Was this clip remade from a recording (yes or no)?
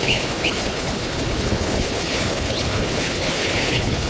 yes